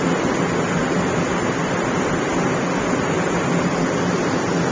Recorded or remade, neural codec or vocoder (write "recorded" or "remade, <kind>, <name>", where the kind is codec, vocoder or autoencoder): recorded